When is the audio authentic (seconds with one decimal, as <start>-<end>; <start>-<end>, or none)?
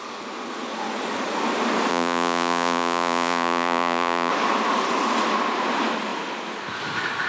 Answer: 0.0-1.9; 4.3-7.3